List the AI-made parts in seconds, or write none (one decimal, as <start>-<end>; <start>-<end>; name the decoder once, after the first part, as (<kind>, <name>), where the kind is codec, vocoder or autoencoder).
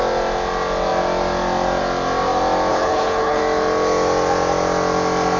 2.7-3.4 (codec, HILCodec)